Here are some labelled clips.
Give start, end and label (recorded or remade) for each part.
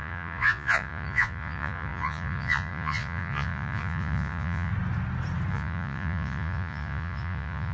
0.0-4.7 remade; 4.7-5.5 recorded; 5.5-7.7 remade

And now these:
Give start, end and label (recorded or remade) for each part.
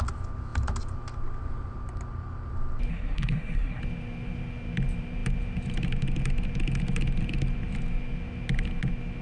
0.0-2.9 recorded; 2.9-3.8 remade; 3.8-9.2 recorded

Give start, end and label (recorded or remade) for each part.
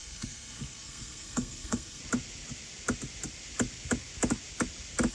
0.0-2.0 remade; 2.0-5.1 recorded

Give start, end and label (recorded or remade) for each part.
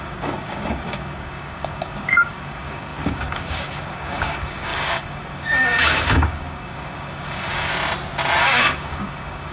0.0-7.7 remade; 7.7-8.4 recorded; 8.4-9.5 remade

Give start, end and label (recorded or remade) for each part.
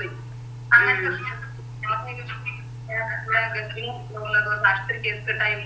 0.0-5.7 recorded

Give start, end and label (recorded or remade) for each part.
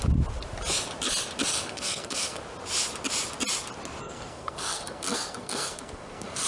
0.0-1.5 recorded; 1.5-2.4 remade; 2.4-4.0 recorded; 4.0-6.5 remade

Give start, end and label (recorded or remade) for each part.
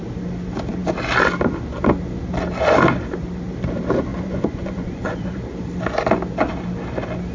0.0-4.1 recorded; 4.1-5.4 remade; 5.4-7.3 recorded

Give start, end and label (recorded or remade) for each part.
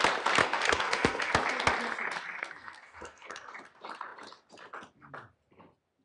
0.0-0.4 recorded; 0.4-1.3 remade; 1.3-2.4 recorded; 2.4-3.5 remade; 3.5-6.0 recorded